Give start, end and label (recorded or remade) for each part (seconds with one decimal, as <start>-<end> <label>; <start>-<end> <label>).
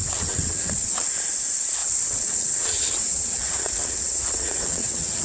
0.0-1.1 remade; 1.1-1.8 recorded; 1.8-5.2 remade